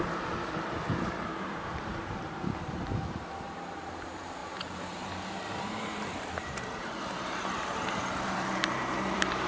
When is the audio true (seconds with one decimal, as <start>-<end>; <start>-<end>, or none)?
none